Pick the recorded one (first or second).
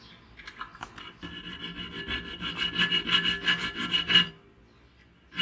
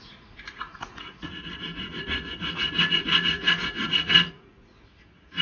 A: first